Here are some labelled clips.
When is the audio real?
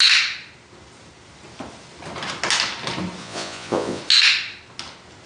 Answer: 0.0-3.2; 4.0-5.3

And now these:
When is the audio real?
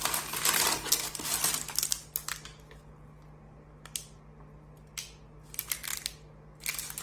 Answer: 0.0-7.0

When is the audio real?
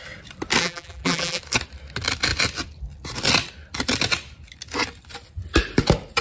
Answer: 0.0-0.6; 1.4-6.2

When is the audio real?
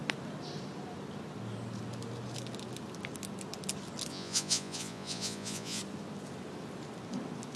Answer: 0.0-4.1; 5.8-7.6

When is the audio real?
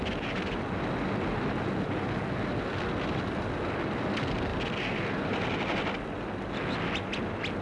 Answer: 0.0-7.6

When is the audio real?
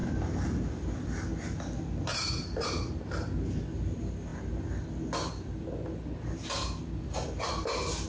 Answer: 0.0-2.1; 2.9-8.1